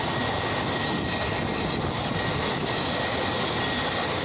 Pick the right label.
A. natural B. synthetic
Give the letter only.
A